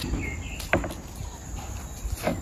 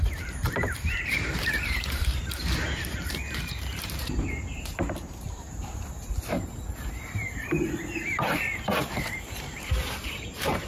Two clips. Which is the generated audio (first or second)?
second